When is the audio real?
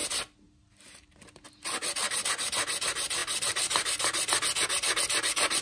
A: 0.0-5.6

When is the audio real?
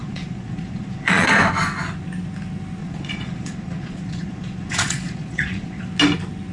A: 1.3-2.8; 5.9-6.5